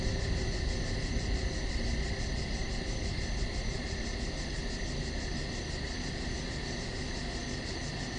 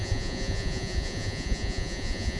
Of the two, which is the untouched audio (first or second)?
first